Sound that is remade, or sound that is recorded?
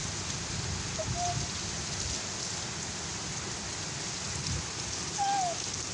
recorded